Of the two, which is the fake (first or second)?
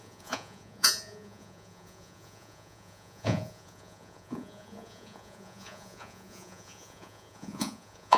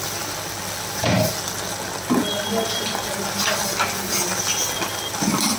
first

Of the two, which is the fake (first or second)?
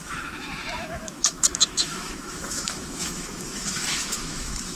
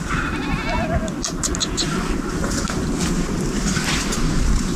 first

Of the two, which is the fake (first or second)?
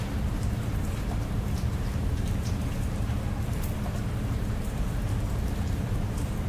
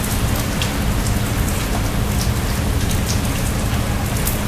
first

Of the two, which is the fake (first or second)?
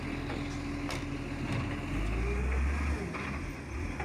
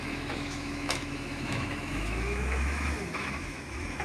second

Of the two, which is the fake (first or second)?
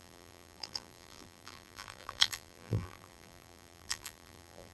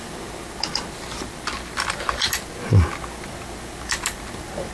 first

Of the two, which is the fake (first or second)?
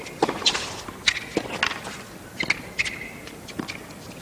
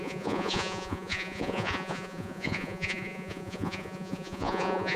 second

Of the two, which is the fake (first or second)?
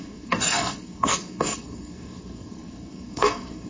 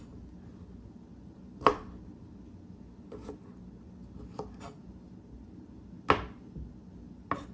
first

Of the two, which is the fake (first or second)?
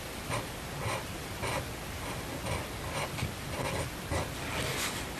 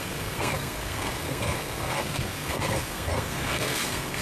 second